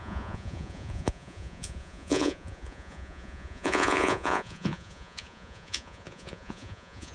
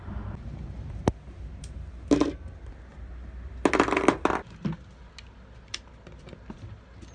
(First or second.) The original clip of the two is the second